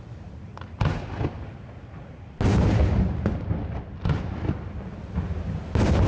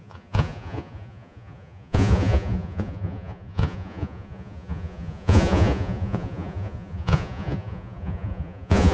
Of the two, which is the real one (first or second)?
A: first